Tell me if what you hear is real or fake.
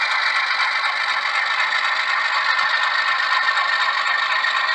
real